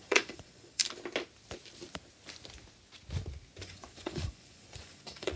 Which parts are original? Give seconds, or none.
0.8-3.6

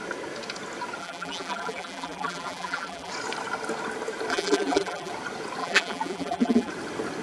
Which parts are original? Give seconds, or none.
0.0-1.0; 3.1-4.3; 5.1-5.6; 6.7-7.2

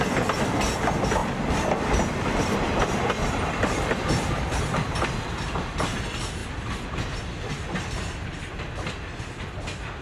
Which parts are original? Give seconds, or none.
0.0-1.2; 5.7-6.4; 7.5-10.0